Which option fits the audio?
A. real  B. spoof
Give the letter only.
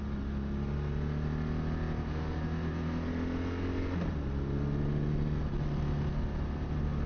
A